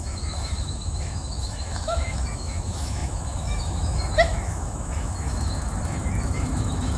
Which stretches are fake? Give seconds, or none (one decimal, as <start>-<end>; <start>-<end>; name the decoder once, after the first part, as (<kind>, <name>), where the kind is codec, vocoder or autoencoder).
0.0-7.0 (autoencoder, DAC-VAE)